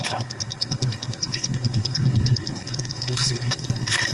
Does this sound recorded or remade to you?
remade